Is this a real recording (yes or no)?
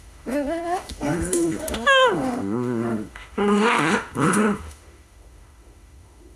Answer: no